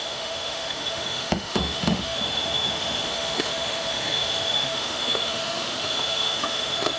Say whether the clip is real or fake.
fake